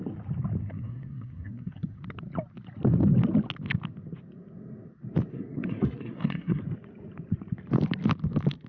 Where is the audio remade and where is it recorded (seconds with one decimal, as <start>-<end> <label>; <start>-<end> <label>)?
0.0-0.6 recorded; 0.6-2.0 remade; 2.0-5.3 recorded; 5.3-6.6 remade; 6.6-8.7 recorded